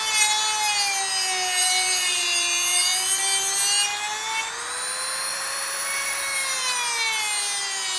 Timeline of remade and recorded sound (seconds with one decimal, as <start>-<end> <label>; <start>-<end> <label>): 0.0-1.6 recorded; 1.6-3.2 remade; 3.2-5.3 recorded; 5.3-6.2 remade; 6.2-8.0 recorded